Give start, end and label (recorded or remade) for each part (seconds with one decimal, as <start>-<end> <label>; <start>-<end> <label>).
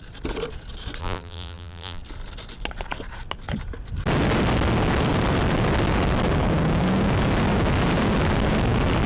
0.0-1.0 recorded; 1.0-2.0 remade; 2.0-9.1 recorded